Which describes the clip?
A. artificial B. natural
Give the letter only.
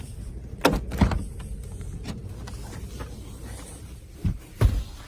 B